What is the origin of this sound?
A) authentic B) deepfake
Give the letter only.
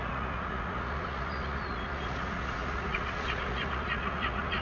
B